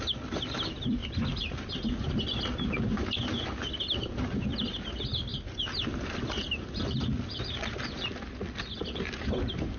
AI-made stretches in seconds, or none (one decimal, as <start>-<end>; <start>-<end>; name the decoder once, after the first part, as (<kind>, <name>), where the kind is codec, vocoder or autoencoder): 1.0-1.7 (vocoder, BigVGAN v2)